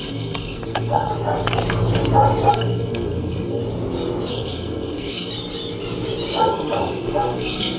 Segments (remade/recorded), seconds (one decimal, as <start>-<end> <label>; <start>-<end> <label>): 0.0-1.1 remade; 1.1-2.5 recorded; 2.5-3.6 remade; 3.6-4.3 recorded; 4.3-5.3 remade; 5.3-6.4 recorded; 6.4-7.8 remade

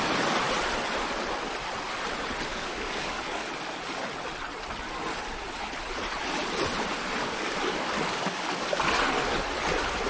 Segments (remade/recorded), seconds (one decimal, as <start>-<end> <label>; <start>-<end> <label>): 0.0-2.5 recorded; 2.5-3.5 remade; 3.5-7.2 recorded; 7.2-8.8 remade; 8.8-10.1 recorded